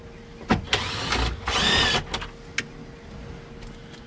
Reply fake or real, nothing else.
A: real